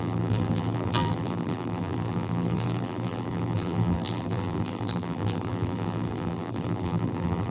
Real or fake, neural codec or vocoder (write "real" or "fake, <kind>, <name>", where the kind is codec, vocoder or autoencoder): fake, vocoder, BigVGAN v2